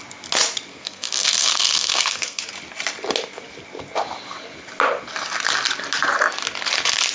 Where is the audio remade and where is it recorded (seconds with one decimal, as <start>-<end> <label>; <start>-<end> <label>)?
0.0-0.7 recorded; 0.7-2.4 remade; 2.4-7.1 recorded